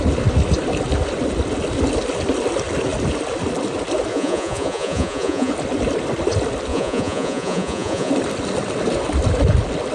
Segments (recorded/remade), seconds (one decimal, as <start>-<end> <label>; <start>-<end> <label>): 0.0-4.1 recorded; 4.1-5.5 remade; 5.5-6.7 recorded; 6.7-8.1 remade; 8.1-9.9 recorded